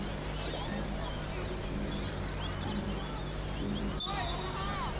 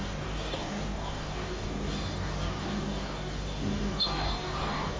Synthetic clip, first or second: second